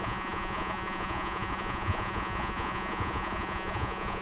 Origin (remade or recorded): remade